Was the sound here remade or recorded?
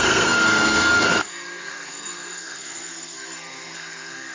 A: remade